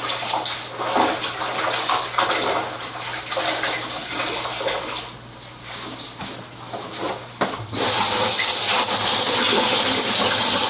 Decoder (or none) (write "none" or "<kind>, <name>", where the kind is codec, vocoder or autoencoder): none